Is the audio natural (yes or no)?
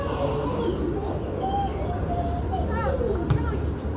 yes